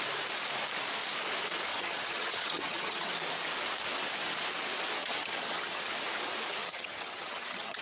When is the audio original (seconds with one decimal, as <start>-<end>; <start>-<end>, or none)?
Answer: 0.0-1.7; 3.1-5.0; 5.8-6.6